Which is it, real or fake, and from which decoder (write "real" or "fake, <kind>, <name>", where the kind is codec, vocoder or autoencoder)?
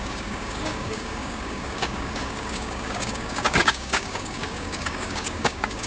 fake, codec, DAC